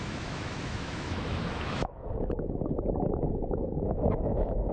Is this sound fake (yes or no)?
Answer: yes